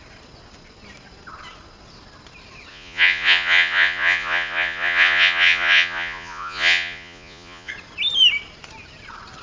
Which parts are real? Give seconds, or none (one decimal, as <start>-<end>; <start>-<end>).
0.0-2.7; 7.7-9.4